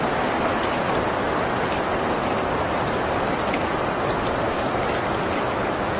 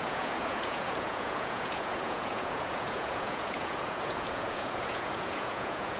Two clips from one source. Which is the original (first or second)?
first